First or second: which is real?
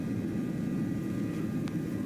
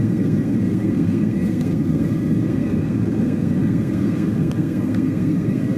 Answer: first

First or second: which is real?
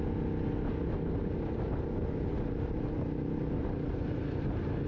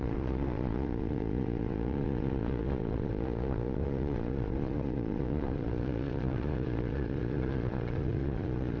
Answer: first